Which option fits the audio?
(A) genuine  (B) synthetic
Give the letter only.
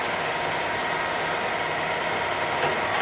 A